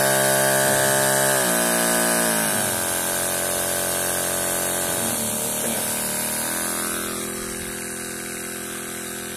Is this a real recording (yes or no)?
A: yes